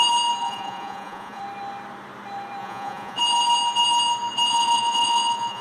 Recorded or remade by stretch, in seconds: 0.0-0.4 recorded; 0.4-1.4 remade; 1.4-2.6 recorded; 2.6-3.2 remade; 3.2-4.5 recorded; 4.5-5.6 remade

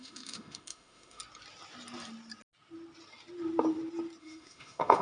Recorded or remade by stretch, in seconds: 0.0-1.2 remade; 1.2-4.2 recorded; 4.2-5.0 remade